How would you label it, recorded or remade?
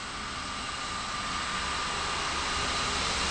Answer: recorded